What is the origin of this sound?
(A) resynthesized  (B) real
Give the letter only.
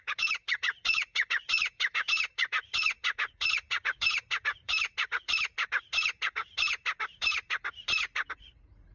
A